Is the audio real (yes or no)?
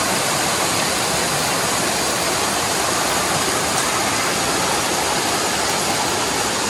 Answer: yes